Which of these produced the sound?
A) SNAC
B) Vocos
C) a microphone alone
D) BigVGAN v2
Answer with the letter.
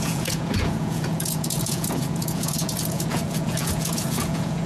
B